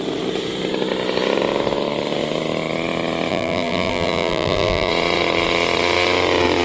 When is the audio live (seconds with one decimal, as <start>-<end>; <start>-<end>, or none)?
0.0-3.3; 4.9-6.6